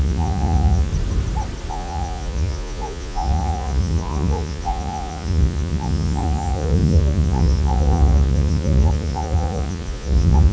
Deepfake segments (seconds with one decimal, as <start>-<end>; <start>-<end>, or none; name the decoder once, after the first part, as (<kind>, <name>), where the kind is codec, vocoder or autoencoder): 0.0-0.9 (vocoder, Vocos); 1.7-10.5